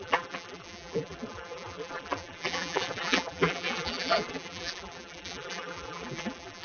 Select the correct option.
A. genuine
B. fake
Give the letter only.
B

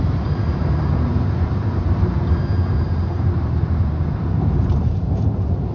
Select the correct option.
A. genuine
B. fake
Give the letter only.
B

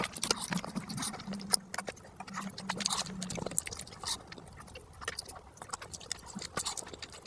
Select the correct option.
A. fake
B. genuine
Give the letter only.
B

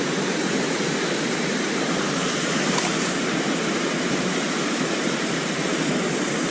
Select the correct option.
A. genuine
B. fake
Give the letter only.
B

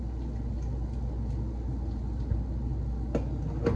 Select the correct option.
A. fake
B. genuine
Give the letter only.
B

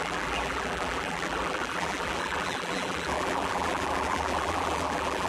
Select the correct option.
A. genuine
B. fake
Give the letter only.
B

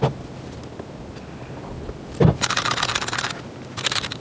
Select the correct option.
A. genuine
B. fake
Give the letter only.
A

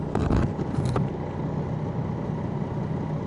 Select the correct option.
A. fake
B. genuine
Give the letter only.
B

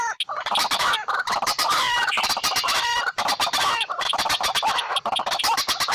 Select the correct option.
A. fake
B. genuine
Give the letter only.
A